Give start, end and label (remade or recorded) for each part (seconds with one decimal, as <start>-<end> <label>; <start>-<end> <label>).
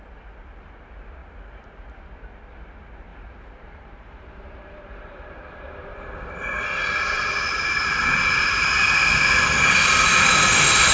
0.0-1.2 recorded; 1.2-1.8 remade; 1.8-3.1 recorded; 3.1-7.8 remade; 7.8-10.9 recorded